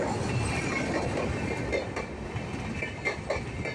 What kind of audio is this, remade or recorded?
recorded